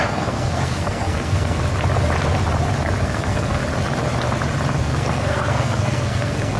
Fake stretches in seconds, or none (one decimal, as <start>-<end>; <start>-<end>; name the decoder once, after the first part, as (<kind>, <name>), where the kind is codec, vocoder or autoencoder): 0.0-1.6 (codec, SNAC); 3.0-3.6; 4.8-6.6